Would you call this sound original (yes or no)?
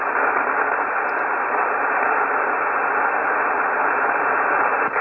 no